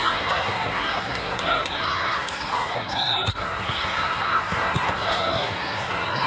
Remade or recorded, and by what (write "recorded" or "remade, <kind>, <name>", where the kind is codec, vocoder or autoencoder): remade, codec, SNAC